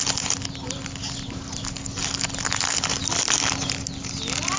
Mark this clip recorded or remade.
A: recorded